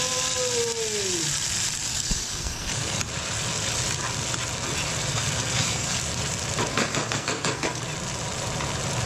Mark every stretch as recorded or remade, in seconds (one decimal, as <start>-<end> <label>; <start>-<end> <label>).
0.0-1.9 recorded; 1.9-3.0 remade; 3.0-5.1 recorded; 5.1-6.0 remade; 6.0-6.7 recorded; 6.7-7.8 remade; 7.8-9.1 recorded